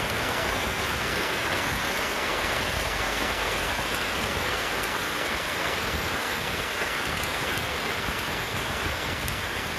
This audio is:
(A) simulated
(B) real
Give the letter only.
A